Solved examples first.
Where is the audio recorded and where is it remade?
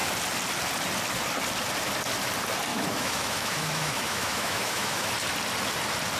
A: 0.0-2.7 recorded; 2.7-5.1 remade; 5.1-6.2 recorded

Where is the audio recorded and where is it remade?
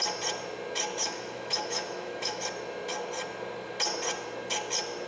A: 0.0-1.0 recorded; 1.0-2.4 remade; 2.4-5.1 recorded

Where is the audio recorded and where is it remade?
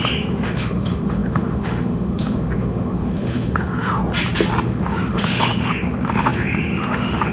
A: 0.0-4.0 remade; 4.0-4.6 recorded; 4.6-7.3 remade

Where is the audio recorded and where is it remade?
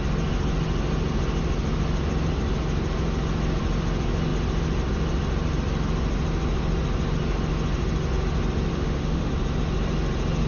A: 0.0-8.7 recorded; 8.7-9.3 remade; 9.3-10.5 recorded